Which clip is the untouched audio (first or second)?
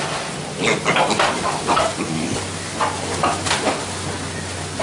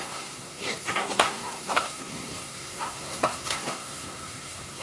first